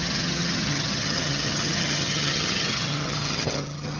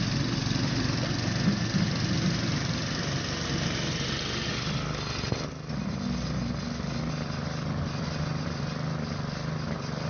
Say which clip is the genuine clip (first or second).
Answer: second